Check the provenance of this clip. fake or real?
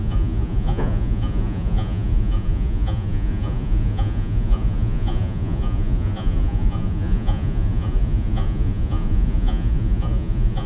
fake